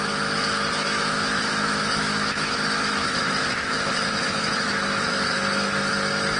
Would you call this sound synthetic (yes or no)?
yes